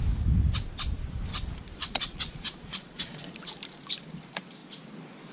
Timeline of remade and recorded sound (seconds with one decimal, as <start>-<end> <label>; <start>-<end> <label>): 0.0-1.8 recorded; 1.8-3.2 remade; 3.2-5.3 recorded